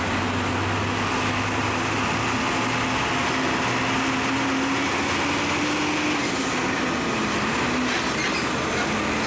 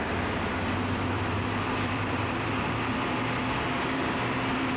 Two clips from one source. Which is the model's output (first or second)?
second